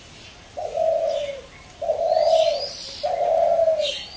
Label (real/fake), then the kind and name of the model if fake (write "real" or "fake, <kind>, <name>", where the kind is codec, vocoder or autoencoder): real